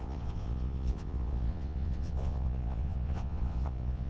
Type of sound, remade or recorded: remade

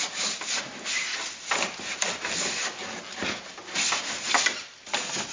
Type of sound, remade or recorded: recorded